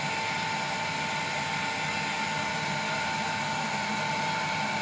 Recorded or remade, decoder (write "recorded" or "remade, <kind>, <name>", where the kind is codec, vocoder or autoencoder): recorded